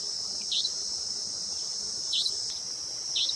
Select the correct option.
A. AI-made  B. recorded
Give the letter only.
A